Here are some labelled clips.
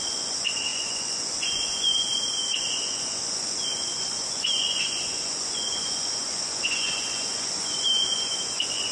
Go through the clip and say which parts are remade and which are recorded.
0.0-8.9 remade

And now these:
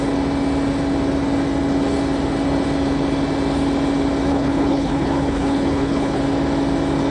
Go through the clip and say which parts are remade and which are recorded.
0.0-4.3 recorded; 4.3-6.2 remade; 6.2-7.1 recorded

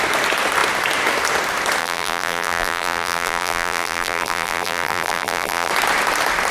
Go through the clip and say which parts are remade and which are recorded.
0.0-1.8 recorded; 1.8-5.7 remade; 5.7-6.5 recorded

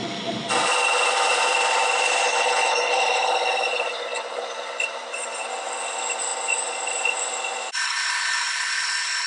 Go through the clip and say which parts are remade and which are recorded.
0.0-6.3 remade; 6.3-8.6 recorded; 8.6-9.3 remade

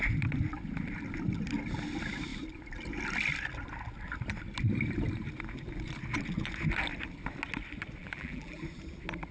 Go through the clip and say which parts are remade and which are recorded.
0.0-8.0 recorded; 8.0-8.6 remade; 8.6-9.3 recorded

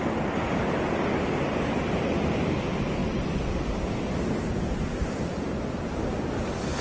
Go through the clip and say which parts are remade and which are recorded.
0.0-6.8 recorded